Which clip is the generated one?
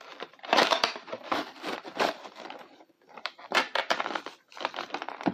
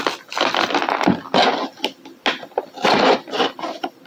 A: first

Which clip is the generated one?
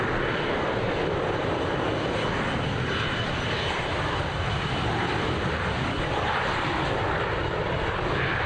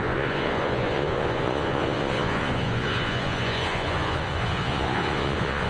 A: second